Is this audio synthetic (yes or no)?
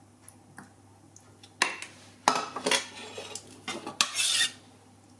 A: no